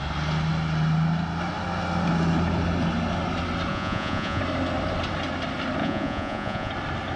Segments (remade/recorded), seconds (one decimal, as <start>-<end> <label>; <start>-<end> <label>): 0.0-3.7 recorded; 3.7-4.4 remade; 4.4-5.8 recorded; 5.8-6.7 remade; 6.7-7.2 recorded